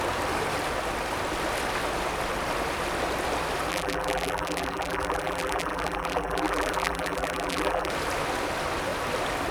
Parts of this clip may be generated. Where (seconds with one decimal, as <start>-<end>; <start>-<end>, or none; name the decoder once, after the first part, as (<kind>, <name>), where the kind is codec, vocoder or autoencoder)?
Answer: 3.7-7.9 (vocoder, BigVGAN v2)